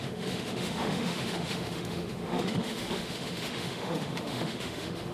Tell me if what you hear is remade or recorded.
remade